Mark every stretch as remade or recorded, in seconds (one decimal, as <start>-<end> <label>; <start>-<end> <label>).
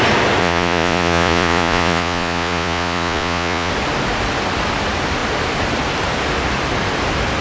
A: 0.0-0.4 recorded; 0.4-3.7 remade; 3.7-7.4 recorded